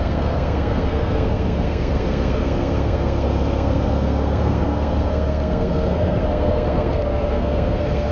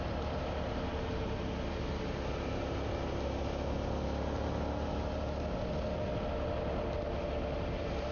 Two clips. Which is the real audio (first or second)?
second